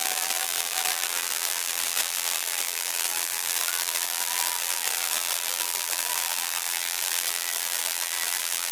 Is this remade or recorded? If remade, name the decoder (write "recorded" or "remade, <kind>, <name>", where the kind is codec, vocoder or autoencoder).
remade, vocoder, BigVGAN v2